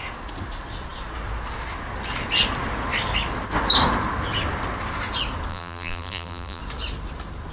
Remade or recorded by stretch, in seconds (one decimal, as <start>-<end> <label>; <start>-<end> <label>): 0.0-5.5 recorded; 5.5-6.6 remade; 6.6-7.5 recorded